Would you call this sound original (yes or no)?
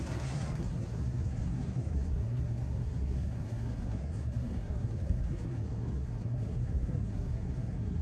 no